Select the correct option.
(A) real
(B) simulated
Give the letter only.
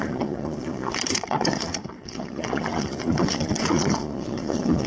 B